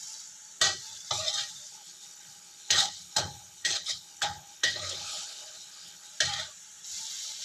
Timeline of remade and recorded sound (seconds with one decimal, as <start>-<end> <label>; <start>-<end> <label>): 0.0-1.7 recorded; 1.7-6.1 remade; 6.1-7.4 recorded